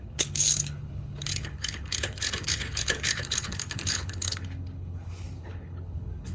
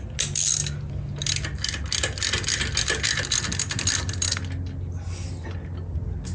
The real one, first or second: second